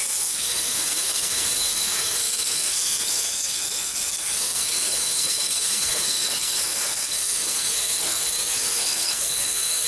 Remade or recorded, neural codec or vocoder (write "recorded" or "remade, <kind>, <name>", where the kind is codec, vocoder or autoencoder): remade, codec, SNAC